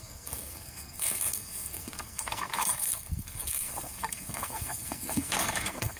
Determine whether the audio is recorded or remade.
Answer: remade